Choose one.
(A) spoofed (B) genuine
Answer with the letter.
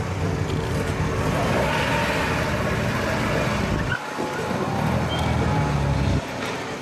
B